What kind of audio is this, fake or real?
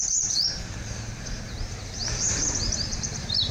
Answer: fake